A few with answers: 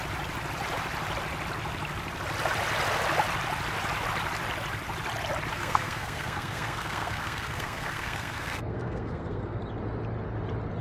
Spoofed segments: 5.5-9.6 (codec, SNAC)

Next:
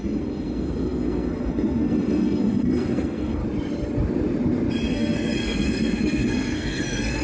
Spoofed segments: 0.0-3.4 (codec, SNAC); 4.9-7.2

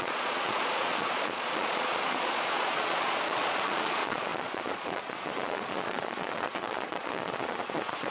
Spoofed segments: 0.0-8.1 (vocoder, Vocos)

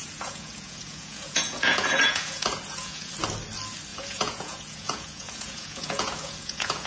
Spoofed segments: 0.0-3.1 (vocoder, Vocos); 3.9-6.9

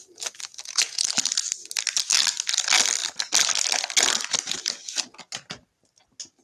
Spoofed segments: none

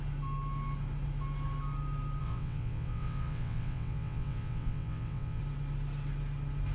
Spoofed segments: 2.2-5.4 (vocoder, WaveNeXt)